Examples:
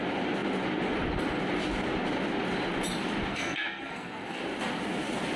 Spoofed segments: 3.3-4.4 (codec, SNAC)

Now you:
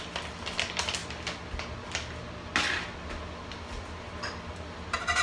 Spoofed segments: none

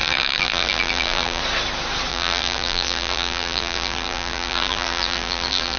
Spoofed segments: 0.0-1.4 (vocoder, BigVGAN v2); 2.1-5.8

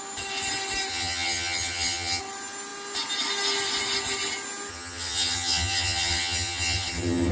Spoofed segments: 0.9-2.2 (vocoder, HiFi-GAN); 4.7-7.3